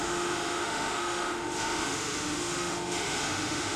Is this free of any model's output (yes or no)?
no